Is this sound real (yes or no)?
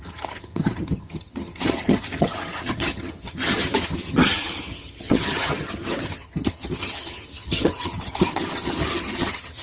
no